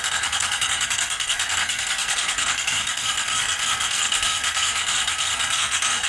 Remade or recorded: remade